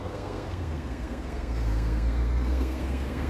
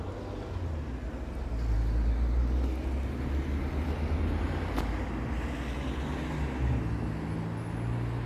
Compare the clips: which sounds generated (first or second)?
first